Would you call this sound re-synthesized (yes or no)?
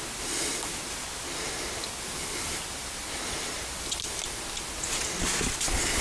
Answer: no